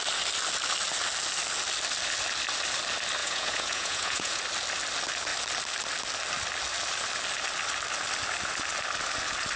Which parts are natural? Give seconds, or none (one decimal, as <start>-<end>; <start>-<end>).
0.0-3.2; 4.4-9.6